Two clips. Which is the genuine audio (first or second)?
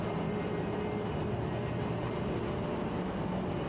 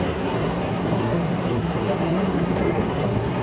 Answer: first